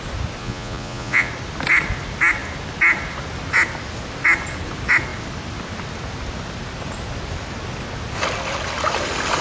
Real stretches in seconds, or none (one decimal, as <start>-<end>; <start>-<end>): 0.0-0.4; 1.3-9.4